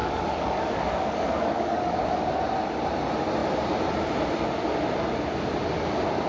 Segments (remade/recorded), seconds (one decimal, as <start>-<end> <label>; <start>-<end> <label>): 0.0-2.4 remade; 2.4-6.3 recorded